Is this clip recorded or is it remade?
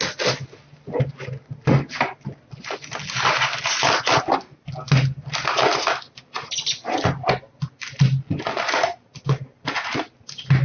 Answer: recorded